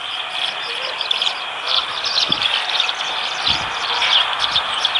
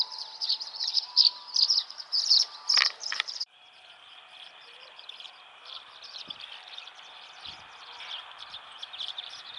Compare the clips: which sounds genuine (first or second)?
first